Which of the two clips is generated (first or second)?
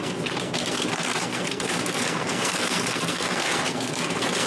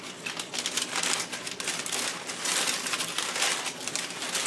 first